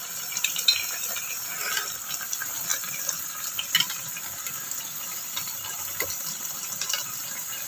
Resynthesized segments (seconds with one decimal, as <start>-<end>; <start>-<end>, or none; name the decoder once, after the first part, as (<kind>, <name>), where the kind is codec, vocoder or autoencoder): none